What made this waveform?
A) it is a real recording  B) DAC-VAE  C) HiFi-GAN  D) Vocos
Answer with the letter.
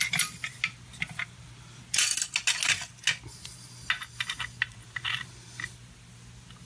A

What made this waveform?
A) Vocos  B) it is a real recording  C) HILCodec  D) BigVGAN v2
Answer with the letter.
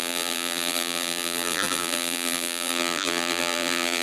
D